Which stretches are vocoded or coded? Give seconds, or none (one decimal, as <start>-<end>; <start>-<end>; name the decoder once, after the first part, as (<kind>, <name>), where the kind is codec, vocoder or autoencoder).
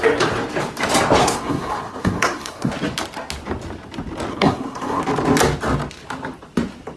1.2-2.7 (codec, SNAC); 4.3-5.0